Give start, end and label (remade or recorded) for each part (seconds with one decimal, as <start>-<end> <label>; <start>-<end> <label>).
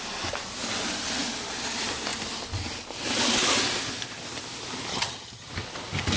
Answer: 0.0-4.9 recorded; 4.9-5.5 remade; 5.5-6.2 recorded